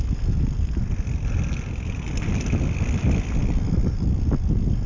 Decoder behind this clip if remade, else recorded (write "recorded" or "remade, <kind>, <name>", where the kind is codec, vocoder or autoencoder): recorded